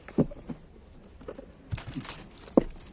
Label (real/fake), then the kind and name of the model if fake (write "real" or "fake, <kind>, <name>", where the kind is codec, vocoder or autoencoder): fake, vocoder, BigVGAN v2